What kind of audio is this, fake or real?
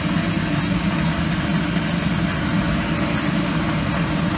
real